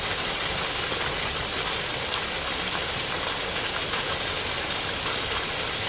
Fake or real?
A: real